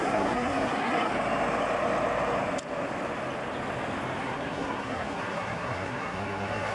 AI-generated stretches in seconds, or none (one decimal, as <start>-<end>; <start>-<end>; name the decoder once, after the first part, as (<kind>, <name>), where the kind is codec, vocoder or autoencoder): 0.0-1.1 (codec, SNAC); 4.2-6.7